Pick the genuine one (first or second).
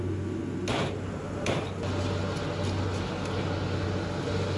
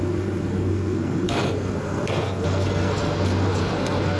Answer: first